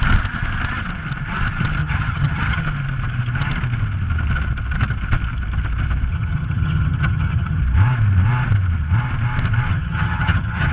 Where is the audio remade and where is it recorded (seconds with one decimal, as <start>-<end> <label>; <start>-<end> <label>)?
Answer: 0.0-1.8 recorded; 1.8-2.6 remade; 2.6-6.1 recorded; 6.1-7.6 remade; 7.6-9.7 recorded; 9.7-10.7 remade